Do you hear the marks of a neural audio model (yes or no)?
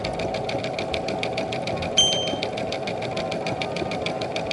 no